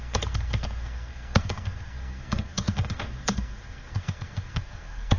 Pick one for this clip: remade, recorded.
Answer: remade